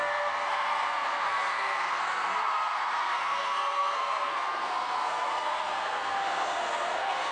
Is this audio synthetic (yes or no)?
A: yes